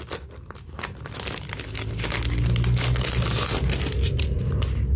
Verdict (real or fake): real